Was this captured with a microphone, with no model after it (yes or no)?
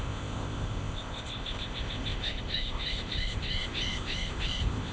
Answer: no